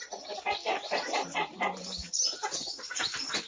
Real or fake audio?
real